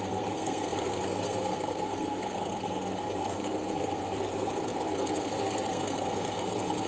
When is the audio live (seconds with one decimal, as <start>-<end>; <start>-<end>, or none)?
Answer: none